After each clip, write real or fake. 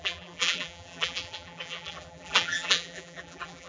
fake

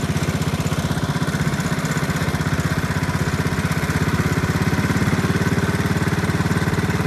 real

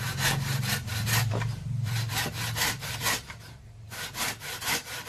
fake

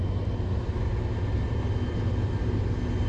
real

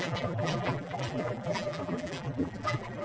fake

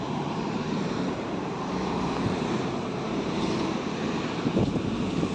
fake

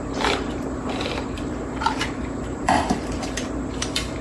fake